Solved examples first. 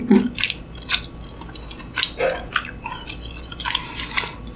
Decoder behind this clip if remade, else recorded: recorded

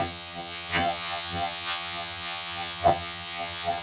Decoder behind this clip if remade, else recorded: remade, vocoder, HiFi-GAN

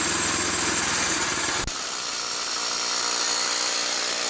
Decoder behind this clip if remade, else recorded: recorded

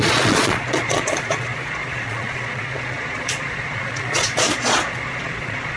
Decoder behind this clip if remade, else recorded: remade, vocoder, Vocos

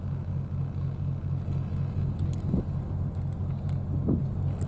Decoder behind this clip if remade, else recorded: recorded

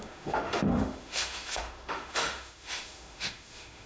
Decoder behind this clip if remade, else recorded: remade, autoencoder, DAC-VAE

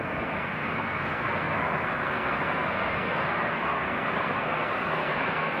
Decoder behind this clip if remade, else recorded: remade, codec, SNAC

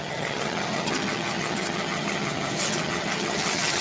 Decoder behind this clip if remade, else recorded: remade, vocoder, HiFi-GAN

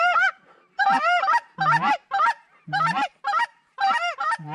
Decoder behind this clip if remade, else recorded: remade, vocoder, BigVGAN v2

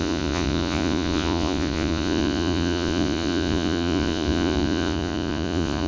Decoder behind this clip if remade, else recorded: remade, vocoder, Vocos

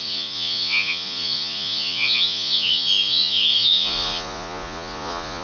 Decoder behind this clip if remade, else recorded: remade, vocoder, Vocos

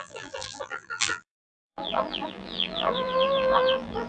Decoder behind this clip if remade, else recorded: remade, vocoder, BigVGAN v2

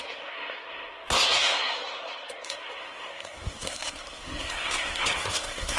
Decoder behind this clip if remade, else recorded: remade, codec, SNAC